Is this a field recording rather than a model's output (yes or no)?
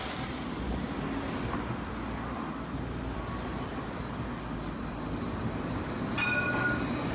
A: yes